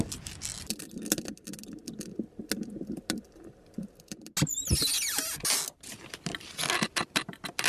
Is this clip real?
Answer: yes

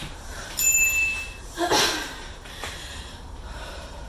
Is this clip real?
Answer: no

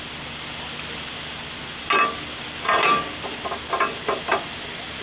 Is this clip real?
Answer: yes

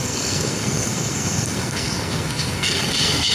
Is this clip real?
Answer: no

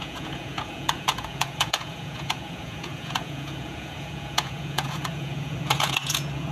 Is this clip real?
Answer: no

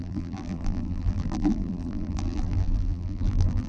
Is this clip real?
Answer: no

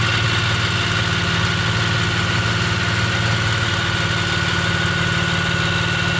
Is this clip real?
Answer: yes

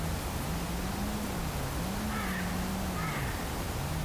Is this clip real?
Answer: yes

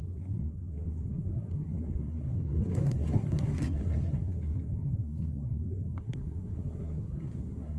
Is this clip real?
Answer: no